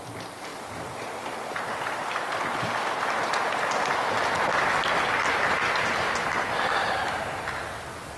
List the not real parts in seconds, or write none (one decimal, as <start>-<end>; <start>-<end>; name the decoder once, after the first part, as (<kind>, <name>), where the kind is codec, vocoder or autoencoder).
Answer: 0.5-3.9 (vocoder, BigVGAN v2)